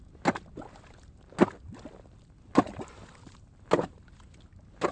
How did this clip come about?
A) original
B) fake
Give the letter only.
A